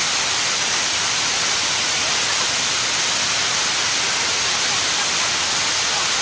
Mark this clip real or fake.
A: real